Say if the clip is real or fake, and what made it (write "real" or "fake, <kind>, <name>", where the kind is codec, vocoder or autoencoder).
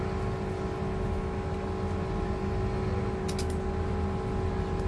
real